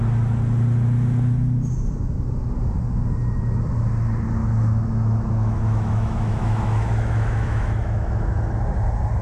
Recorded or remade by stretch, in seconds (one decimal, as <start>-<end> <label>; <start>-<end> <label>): 0.0-4.4 recorded; 4.4-8.6 remade; 8.6-9.2 recorded